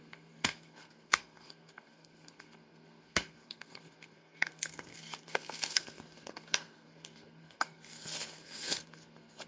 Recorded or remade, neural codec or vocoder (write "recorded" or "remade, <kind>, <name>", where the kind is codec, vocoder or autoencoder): remade, codec, SNAC